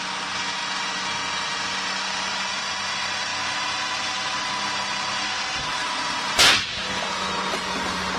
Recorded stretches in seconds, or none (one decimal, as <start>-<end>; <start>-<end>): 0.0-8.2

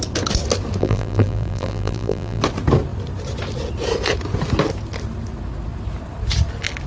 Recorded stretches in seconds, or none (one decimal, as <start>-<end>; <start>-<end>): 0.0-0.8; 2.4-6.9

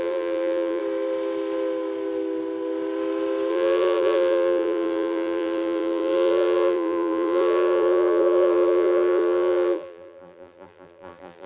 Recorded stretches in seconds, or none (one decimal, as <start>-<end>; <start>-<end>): 0.8-3.5